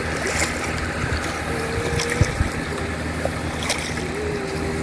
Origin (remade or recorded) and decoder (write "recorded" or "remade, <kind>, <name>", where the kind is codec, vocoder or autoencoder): recorded